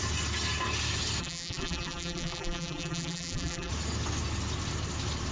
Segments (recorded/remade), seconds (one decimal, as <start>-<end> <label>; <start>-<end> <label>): 0.0-1.2 recorded; 1.2-3.7 remade; 3.7-5.3 recorded